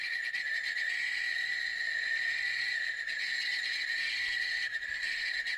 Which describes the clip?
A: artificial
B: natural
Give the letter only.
B